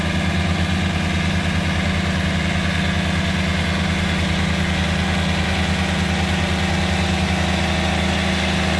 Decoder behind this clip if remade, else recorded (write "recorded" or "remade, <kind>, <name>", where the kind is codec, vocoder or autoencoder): recorded